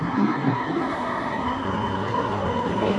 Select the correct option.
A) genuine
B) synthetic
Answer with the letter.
B